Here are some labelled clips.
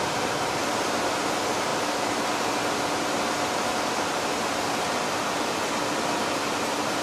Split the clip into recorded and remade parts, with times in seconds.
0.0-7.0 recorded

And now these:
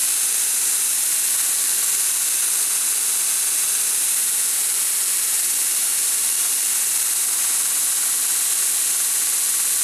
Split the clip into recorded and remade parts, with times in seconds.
0.0-0.8 remade; 0.8-5.8 recorded; 5.8-6.6 remade; 6.6-9.8 recorded